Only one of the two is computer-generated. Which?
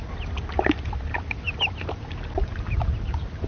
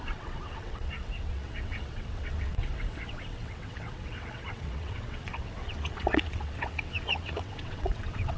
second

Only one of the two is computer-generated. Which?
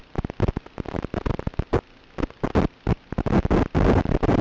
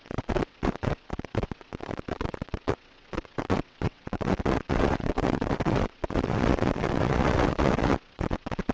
second